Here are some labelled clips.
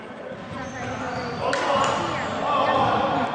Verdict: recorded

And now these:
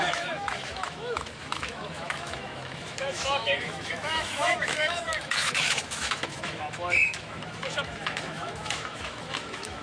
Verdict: remade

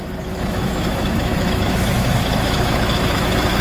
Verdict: remade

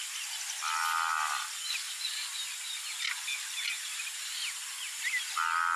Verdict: recorded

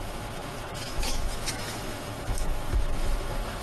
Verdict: remade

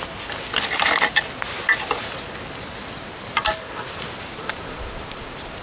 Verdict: recorded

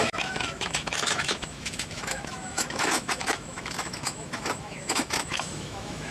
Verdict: remade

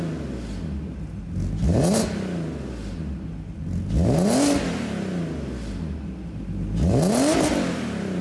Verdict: recorded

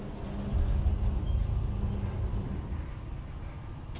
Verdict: recorded